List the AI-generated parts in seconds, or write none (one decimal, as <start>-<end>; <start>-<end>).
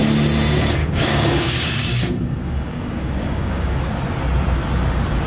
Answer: 0.8-3.9